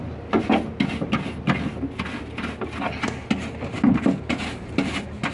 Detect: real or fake real